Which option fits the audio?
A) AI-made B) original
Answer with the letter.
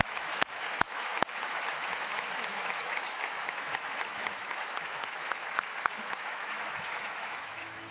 A